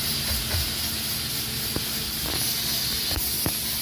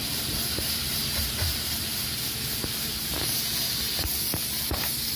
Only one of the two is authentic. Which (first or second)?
first